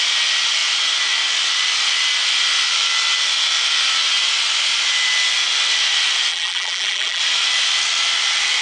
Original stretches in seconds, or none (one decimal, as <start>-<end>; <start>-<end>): 0.0-6.3; 7.2-8.6